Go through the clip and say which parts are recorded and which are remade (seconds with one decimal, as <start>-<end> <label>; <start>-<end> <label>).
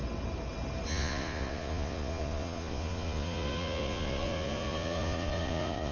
0.0-0.9 recorded; 0.9-5.9 remade